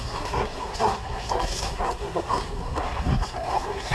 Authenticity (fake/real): fake